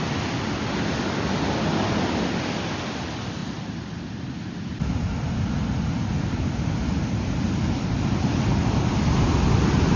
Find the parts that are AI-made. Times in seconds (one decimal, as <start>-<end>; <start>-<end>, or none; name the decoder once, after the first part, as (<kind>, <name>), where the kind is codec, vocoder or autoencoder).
none